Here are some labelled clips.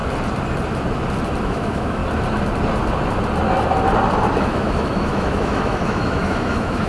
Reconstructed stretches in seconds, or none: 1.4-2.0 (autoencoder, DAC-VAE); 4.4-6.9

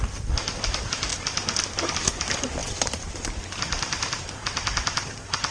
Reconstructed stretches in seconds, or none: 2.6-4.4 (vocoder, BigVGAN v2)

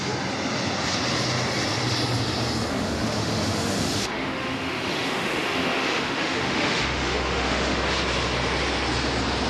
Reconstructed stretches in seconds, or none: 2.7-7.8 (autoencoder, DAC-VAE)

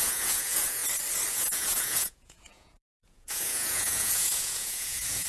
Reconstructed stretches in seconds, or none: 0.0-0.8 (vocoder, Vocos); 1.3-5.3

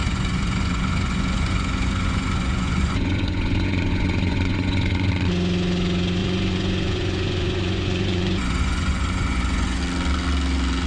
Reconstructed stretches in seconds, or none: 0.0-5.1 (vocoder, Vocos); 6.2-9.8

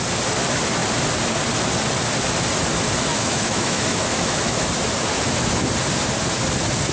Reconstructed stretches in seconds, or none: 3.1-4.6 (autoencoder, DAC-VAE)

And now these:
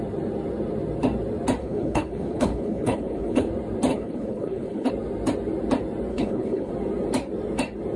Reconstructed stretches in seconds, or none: 1.6-3.5 (codec, HILCodec); 3.9-4.9; 6.1-6.7

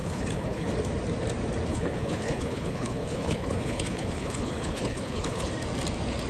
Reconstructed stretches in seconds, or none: 0.0-0.7 (codec, HILCodec); 1.7-5.5